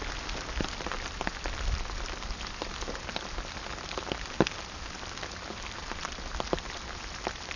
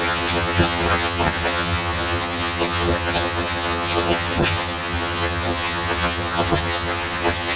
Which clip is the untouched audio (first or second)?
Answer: first